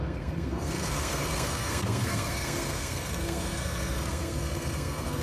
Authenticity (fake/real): fake